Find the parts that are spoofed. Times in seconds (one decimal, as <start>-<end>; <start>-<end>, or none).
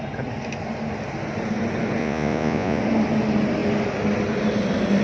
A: 2.0-2.8